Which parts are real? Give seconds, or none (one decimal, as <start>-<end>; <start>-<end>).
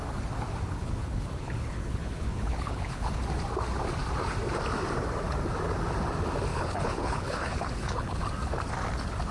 0.0-0.8; 3.2-6.5; 8.2-9.3